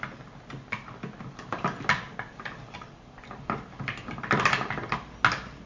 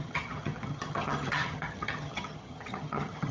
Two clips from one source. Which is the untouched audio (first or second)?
first